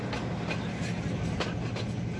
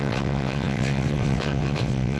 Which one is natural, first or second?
first